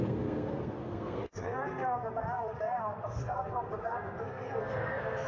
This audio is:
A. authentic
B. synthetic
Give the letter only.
B